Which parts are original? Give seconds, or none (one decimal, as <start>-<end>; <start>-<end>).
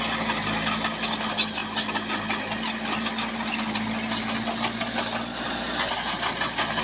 0.0-6.8